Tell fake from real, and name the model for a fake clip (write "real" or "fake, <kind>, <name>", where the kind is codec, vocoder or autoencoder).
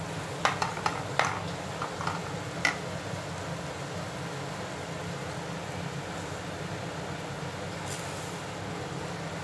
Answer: real